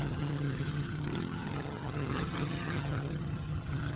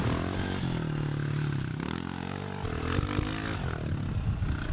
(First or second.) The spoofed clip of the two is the first